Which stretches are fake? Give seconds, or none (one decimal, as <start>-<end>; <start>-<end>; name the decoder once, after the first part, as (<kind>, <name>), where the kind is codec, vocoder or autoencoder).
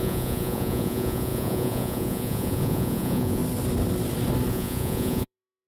0.0-3.4 (vocoder, Vocos); 4.5-5.7